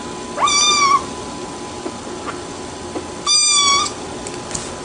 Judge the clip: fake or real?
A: real